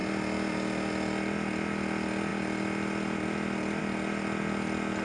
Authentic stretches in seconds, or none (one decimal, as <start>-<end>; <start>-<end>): 0.0-5.0